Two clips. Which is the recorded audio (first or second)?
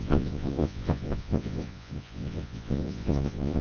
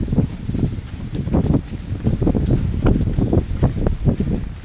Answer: second